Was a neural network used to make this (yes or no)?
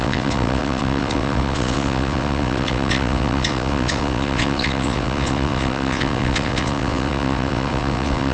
yes